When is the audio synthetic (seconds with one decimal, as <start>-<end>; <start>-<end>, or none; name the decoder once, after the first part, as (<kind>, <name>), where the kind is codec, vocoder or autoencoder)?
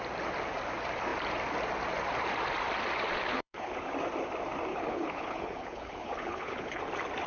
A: 3.3-3.9 (codec, HILCodec); 4.7-6.8